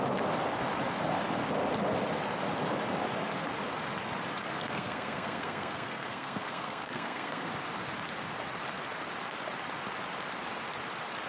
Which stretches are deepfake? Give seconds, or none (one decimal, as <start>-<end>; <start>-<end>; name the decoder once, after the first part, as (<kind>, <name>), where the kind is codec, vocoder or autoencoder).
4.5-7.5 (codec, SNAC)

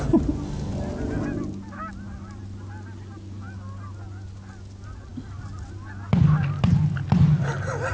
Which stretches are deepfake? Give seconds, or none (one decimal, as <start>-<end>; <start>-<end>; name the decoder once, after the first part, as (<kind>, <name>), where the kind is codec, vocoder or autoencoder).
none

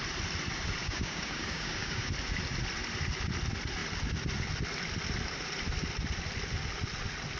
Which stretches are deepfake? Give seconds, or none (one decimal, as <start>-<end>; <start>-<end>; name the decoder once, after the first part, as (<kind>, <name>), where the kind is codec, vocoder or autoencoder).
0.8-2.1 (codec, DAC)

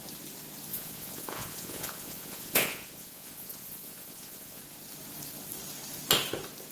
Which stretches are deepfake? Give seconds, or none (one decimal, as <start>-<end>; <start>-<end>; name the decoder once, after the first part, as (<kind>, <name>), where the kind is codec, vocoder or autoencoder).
0.7-4.6 (vocoder, Vocos)

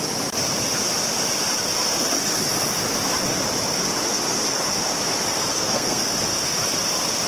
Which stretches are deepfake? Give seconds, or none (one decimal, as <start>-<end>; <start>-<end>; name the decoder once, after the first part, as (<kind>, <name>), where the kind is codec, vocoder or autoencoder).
5.5-6.1 (codec, SNAC)

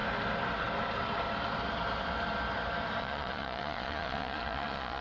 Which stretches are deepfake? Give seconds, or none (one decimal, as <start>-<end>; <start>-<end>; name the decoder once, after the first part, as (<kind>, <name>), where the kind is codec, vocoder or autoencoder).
3.0-5.0 (vocoder, Vocos)

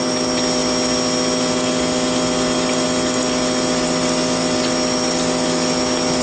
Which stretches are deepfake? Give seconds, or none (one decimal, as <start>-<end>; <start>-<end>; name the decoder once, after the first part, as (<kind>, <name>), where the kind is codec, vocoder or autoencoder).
none

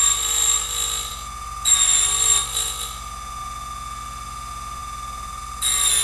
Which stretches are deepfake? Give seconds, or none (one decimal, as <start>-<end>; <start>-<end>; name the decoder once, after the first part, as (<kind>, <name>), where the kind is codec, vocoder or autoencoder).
none